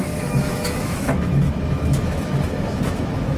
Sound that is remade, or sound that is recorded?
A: remade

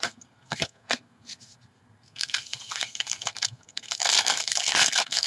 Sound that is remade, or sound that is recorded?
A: remade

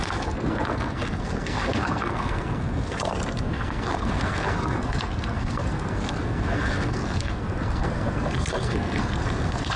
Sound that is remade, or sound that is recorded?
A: remade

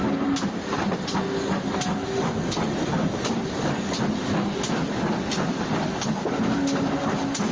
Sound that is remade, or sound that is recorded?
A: recorded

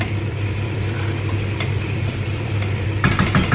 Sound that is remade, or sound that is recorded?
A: remade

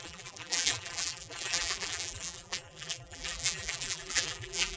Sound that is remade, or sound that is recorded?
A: remade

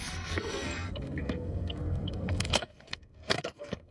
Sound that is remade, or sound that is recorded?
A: remade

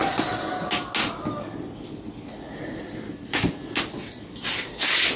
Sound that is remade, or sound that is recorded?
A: recorded